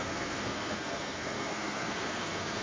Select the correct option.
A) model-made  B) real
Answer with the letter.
A